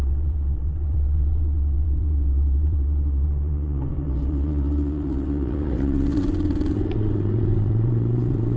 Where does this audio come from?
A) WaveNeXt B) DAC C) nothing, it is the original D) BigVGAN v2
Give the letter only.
A